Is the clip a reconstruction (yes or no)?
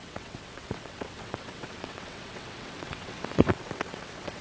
yes